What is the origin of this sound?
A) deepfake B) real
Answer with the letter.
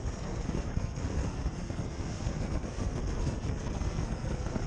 A